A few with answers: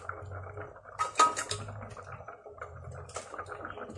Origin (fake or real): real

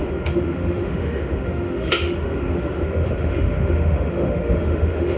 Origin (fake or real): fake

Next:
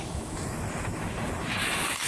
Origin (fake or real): fake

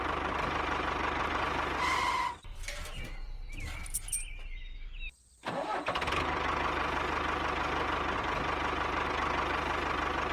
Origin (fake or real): real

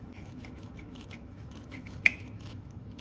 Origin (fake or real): fake